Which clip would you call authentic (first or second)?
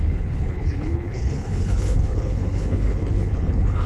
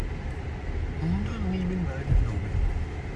second